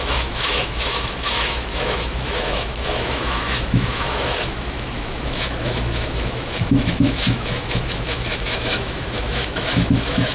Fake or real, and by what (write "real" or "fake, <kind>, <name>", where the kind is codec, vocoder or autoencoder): fake, autoencoder, DAC-VAE